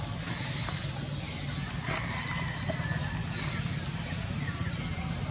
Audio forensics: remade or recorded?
recorded